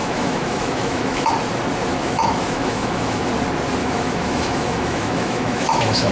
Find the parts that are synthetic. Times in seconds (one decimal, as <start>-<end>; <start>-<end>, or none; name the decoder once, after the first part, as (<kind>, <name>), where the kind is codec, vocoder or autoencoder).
0.0-1.3 (autoencoder, DAC-VAE); 1.9-3.3; 3.8-6.1